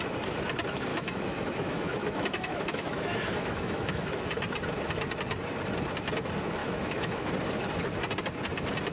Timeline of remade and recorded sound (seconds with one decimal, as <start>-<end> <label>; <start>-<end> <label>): 0.0-0.9 recorded; 0.9-4.2 remade; 4.2-6.6 recorded; 6.6-7.3 remade; 7.3-8.9 recorded